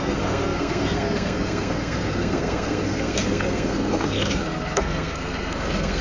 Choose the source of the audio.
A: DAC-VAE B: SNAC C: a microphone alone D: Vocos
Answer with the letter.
B